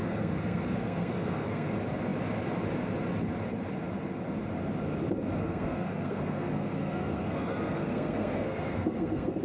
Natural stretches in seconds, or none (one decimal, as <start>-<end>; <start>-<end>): 1.7-5.4